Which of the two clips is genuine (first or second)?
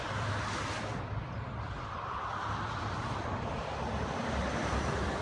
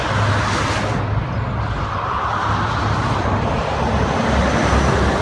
second